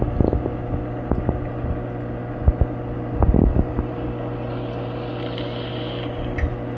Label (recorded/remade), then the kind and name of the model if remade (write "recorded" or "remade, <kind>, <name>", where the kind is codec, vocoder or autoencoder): recorded